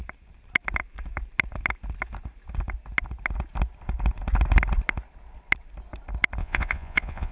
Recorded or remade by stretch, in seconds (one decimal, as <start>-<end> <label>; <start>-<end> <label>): 0.0-6.4 recorded; 6.4-7.3 remade